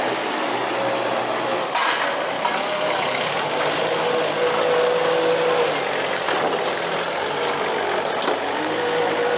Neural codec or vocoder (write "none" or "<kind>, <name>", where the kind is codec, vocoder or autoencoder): none